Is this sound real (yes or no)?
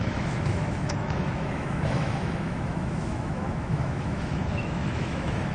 no